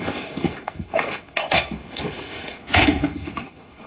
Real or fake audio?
fake